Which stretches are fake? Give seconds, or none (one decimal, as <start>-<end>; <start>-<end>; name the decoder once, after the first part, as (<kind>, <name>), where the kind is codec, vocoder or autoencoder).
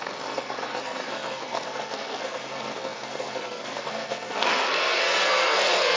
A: 0.0-6.0 (codec, SNAC)